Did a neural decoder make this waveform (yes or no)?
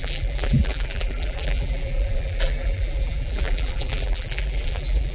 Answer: yes